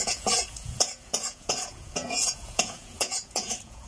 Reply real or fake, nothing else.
fake